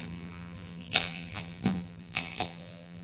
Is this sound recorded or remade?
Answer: remade